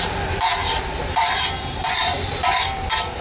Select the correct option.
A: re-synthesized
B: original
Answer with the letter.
A